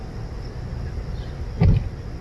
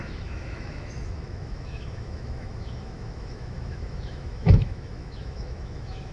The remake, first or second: second